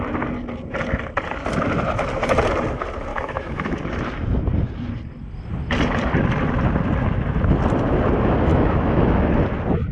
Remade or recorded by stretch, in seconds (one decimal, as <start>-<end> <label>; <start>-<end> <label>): 0.0-3.1 recorded; 3.1-3.8 remade; 3.8-8.5 recorded; 8.5-9.3 remade; 9.3-9.9 recorded